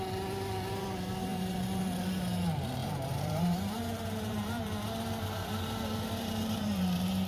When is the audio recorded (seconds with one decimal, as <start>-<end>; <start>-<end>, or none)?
0.0-1.3; 1.8-2.8